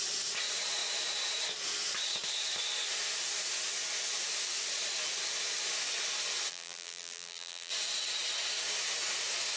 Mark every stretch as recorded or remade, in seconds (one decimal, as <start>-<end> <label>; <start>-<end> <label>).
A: 0.0-6.5 recorded; 6.5-7.7 remade; 7.7-9.6 recorded